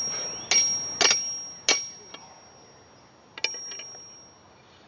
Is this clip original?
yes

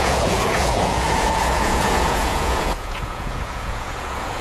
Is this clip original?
no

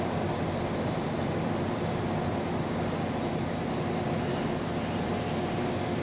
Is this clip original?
yes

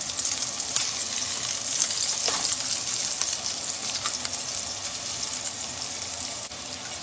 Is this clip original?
yes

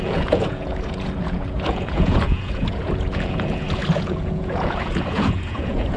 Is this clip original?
no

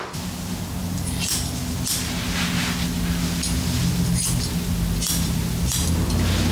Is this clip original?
yes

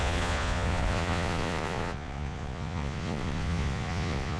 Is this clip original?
no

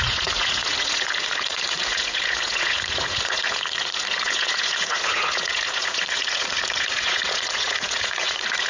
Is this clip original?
no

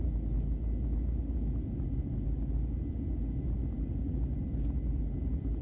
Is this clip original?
yes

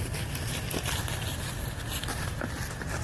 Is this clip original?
yes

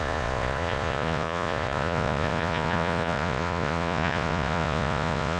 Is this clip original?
no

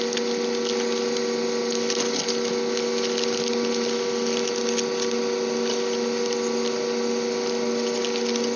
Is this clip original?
yes